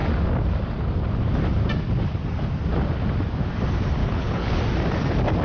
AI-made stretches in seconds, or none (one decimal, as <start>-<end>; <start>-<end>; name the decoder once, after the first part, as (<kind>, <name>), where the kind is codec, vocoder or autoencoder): 4.0-4.6 (codec, HILCodec)